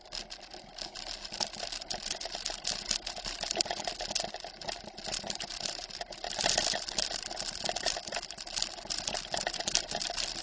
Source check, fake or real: real